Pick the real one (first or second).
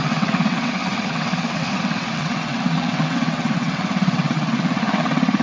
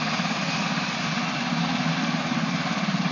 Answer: second